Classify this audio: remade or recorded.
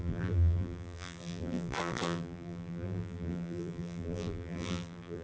remade